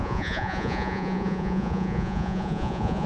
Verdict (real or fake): fake